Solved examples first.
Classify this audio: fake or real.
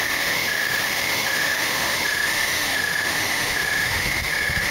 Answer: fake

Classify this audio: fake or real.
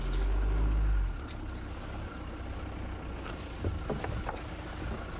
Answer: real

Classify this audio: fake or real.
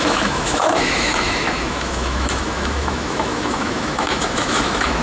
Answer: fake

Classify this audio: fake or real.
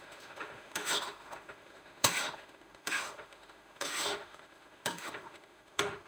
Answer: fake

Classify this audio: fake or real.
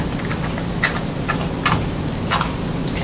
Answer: real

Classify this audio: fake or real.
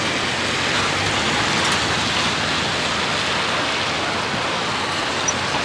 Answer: real